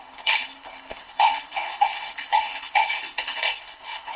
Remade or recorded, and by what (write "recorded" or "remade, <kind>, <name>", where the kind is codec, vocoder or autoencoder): remade, codec, HILCodec